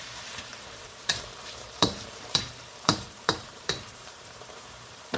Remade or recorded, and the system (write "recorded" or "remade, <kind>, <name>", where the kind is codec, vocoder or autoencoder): remade, vocoder, BigVGAN v2